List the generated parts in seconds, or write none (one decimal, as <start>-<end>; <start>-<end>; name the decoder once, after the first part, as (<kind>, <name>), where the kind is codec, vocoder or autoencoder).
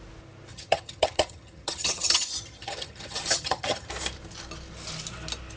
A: 0.5-3.9 (vocoder, HiFi-GAN)